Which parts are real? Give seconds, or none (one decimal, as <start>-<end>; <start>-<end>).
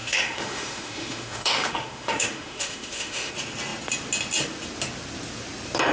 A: 3.3-5.9